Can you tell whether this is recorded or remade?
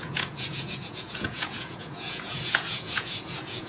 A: remade